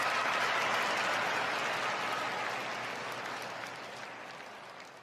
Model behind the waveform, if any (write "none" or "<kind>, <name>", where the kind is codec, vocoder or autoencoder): none